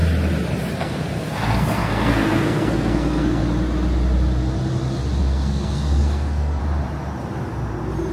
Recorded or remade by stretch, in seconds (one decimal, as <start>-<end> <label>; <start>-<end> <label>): 0.0-0.8 recorded; 0.8-3.4 remade; 3.4-5.2 recorded; 5.2-6.6 remade; 6.6-8.1 recorded